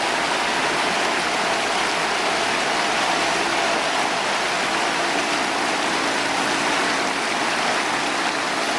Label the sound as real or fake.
real